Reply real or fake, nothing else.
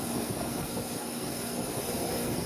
fake